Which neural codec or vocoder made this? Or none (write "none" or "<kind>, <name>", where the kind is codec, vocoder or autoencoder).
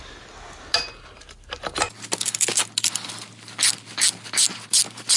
none